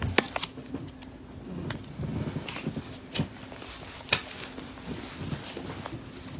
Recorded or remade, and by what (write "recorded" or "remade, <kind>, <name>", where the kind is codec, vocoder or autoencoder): recorded